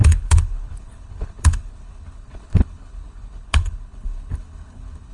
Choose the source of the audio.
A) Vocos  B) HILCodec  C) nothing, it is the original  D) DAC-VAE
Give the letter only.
B